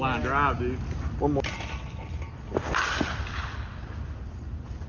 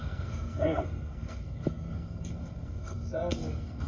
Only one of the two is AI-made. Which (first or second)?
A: second